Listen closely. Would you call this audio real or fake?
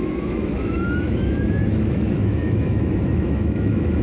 fake